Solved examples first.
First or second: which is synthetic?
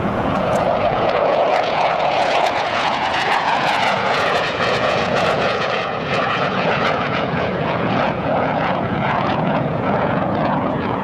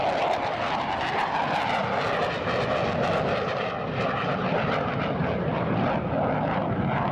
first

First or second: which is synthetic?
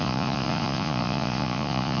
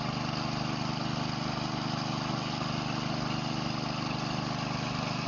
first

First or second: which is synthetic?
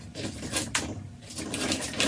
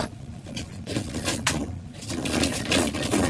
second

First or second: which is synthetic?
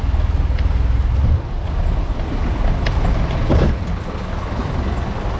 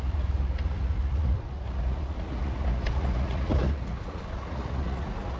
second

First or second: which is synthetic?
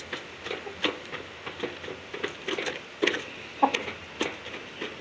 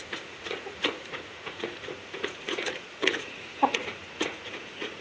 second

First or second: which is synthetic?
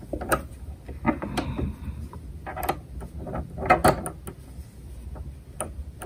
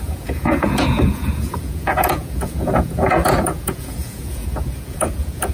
second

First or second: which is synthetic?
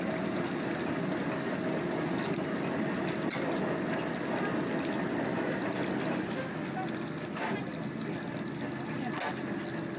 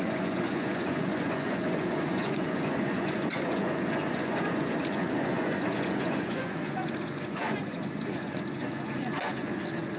second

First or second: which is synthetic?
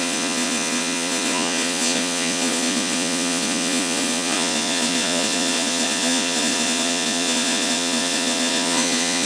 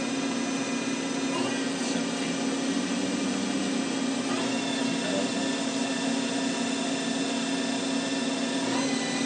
first